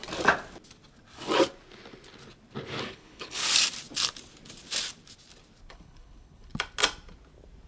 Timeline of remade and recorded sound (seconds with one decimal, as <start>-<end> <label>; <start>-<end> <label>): 0.0-2.8 recorded; 2.8-3.4 remade; 3.4-5.7 recorded; 5.7-6.5 remade; 6.5-7.7 recorded